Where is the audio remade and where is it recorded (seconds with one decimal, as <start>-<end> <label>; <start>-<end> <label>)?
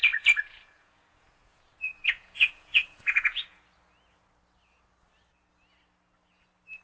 0.0-3.6 remade; 3.6-6.8 recorded